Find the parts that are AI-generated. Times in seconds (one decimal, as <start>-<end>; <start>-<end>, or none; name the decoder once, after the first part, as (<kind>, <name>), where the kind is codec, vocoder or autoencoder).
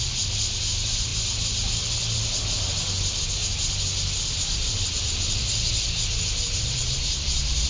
none